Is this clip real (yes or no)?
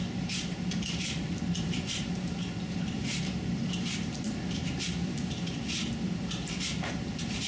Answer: no